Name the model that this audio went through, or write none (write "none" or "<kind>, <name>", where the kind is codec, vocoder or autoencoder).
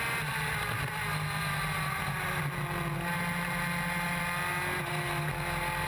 none